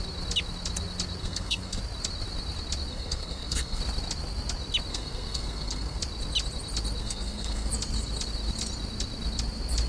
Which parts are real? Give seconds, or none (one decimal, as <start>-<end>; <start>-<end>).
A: 0.0-1.2; 1.8-2.9; 3.8-4.9; 6.0-7.0; 7.7-9.9